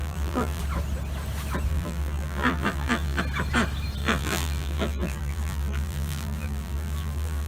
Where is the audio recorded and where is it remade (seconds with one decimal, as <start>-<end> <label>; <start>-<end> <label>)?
0.0-0.6 remade; 0.6-1.7 recorded; 1.7-3.2 remade; 3.2-4.0 recorded; 4.0-7.5 remade